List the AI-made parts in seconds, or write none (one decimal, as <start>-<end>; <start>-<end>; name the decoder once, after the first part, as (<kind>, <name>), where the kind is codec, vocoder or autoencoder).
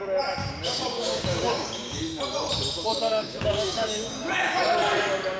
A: 0.4-2.0 (codec, DAC); 2.9-4.6